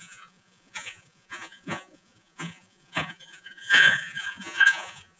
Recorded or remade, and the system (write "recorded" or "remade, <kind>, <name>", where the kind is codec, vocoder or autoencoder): remade, vocoder, Vocos